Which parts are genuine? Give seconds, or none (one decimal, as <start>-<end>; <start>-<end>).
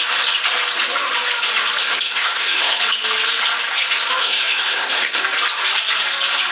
0.0-1.8; 2.8-4.2; 5.2-6.5